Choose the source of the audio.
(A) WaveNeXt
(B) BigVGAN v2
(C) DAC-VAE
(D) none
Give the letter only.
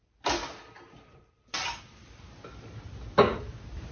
D